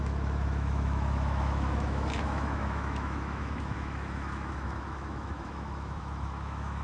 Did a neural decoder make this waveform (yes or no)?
yes